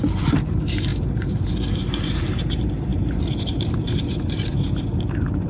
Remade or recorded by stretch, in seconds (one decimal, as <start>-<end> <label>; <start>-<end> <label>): 0.0-5.5 remade